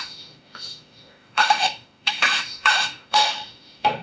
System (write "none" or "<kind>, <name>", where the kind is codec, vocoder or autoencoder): autoencoder, DAC-VAE